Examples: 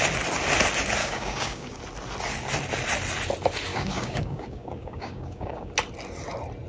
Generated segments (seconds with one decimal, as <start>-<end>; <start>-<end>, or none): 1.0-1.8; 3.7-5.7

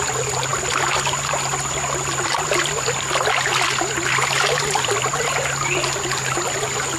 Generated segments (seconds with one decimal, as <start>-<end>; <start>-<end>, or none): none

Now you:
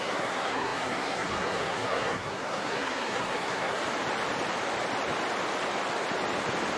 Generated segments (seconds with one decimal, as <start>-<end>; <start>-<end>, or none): 0.0-3.8

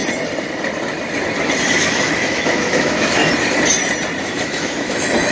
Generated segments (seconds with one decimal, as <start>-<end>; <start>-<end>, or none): 1.8-3.2; 4.2-5.3

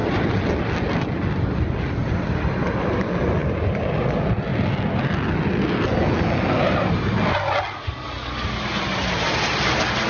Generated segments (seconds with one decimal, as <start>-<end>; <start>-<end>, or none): none